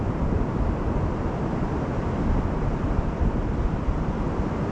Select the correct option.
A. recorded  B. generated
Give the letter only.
A